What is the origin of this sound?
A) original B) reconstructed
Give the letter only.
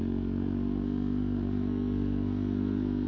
B